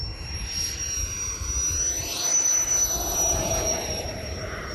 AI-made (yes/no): yes